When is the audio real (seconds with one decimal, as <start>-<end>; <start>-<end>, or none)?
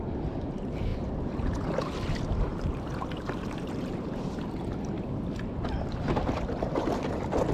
0.0-2.5; 4.4-7.5